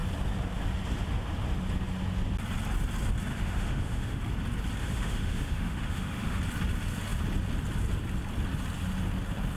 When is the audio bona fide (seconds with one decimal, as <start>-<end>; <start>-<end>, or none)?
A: 0.0-3.3; 4.2-4.8; 6.4-9.6